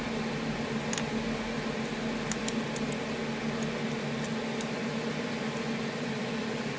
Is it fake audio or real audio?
real